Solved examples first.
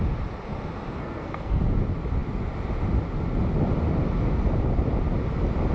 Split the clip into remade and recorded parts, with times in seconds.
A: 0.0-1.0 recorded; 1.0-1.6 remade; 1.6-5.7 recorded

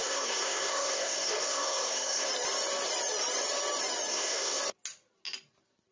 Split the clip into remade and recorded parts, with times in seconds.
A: 0.0-2.3 remade; 2.3-4.1 recorded; 4.1-4.6 remade; 4.6-5.9 recorded